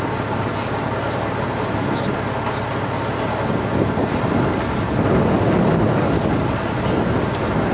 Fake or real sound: real